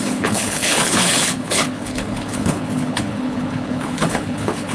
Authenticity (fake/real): fake